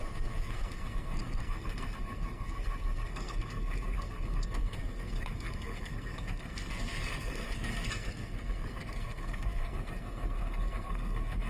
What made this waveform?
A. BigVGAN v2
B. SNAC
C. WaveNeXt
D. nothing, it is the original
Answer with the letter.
B